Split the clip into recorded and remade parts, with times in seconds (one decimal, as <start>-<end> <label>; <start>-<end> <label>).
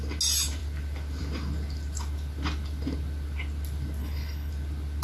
0.0-4.0 recorded; 4.0-4.5 remade; 4.5-5.0 recorded